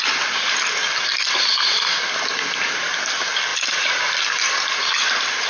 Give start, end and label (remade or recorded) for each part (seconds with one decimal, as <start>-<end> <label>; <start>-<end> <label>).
0.0-3.5 recorded; 3.5-4.9 remade; 4.9-5.5 recorded